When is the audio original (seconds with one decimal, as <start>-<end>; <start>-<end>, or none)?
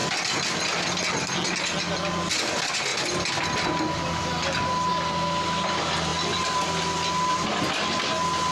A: 0.0-8.5